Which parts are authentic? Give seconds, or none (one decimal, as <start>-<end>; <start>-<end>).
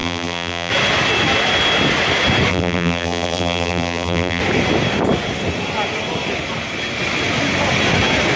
0.7-2.5; 4.4-8.4